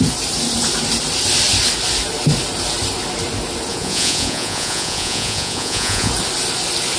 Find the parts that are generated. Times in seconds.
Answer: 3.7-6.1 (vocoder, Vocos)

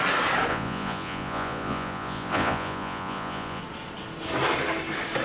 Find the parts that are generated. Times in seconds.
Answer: 0.5-3.6 (vocoder, Vocos)

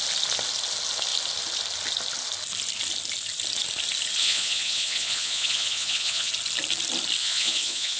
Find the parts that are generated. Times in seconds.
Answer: 4.2-6.3 (vocoder, Vocos); 7.2-8.0

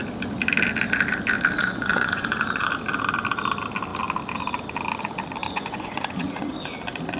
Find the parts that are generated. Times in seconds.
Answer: 1.6-2.7 (vocoder, Vocos); 5.4-6.5

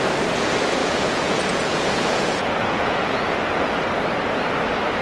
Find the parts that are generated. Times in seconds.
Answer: 0.8-3.8 (vocoder, Vocos)